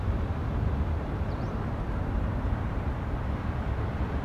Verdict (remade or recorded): remade